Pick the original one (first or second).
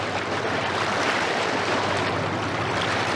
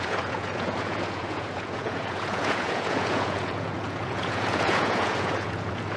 first